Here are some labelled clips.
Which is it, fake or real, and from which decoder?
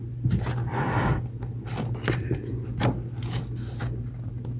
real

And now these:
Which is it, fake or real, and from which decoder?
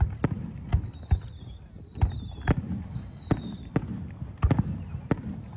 real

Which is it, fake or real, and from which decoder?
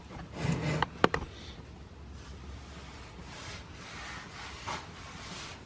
real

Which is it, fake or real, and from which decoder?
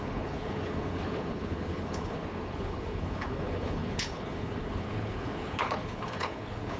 fake, codec, HILCodec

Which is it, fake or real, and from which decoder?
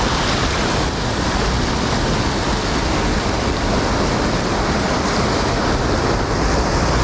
real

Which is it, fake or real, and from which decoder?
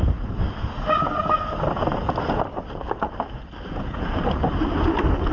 real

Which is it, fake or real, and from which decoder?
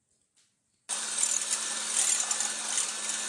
real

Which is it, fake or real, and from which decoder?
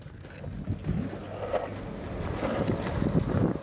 real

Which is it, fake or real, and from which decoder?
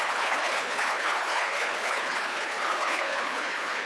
fake, codec, HILCodec